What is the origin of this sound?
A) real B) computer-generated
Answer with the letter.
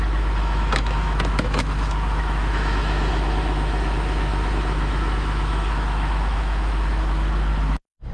B